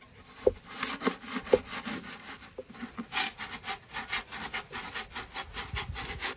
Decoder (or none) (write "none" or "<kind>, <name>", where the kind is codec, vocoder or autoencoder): none